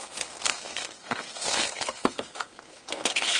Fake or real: fake